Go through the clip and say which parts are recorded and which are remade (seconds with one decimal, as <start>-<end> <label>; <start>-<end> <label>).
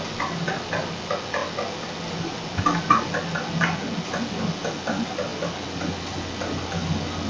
0.0-7.3 recorded